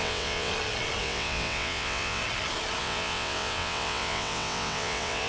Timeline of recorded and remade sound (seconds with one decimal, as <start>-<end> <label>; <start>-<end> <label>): 0.0-0.5 remade; 0.5-1.0 recorded; 1.0-2.2 remade; 2.2-2.8 recorded; 2.8-5.3 remade

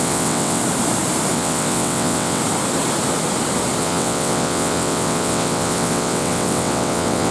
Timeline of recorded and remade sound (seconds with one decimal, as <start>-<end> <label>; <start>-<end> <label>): 0.0-0.6 remade; 0.6-1.3 recorded; 1.3-2.4 remade; 2.4-3.8 recorded; 3.8-7.3 remade

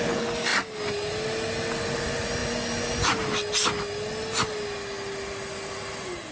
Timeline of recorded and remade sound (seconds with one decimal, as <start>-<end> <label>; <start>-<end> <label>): 0.0-6.3 recorded

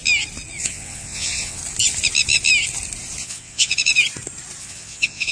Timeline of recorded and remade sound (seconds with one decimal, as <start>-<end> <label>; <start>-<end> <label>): 0.0-0.6 recorded; 0.6-1.6 remade; 1.6-3.2 recorded; 3.2-3.7 remade; 3.7-4.6 recorded; 4.6-5.3 remade